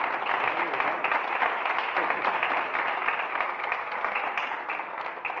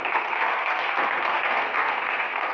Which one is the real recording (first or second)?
first